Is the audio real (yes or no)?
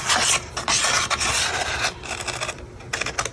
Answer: yes